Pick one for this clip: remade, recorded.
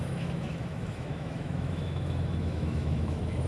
remade